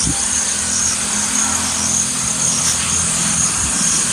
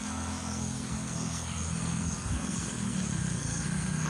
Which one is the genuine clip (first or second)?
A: first